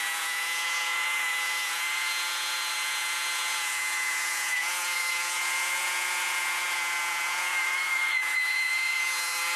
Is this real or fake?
fake